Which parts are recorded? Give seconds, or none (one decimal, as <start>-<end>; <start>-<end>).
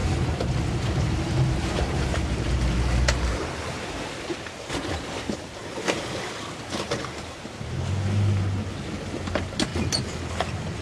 0.0-0.7; 5.6-8.8; 9.7-10.8